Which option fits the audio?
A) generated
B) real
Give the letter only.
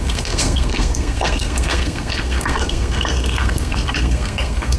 A